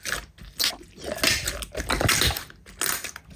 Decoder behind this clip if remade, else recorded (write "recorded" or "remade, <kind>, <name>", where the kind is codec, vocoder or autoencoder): recorded